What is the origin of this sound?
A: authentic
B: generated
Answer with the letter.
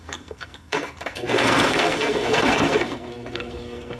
B